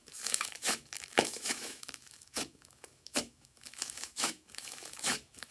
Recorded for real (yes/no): no